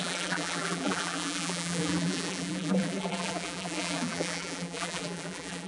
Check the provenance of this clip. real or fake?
fake